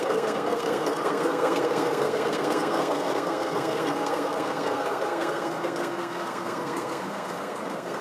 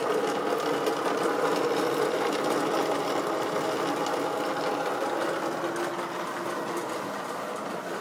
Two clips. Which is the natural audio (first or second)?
second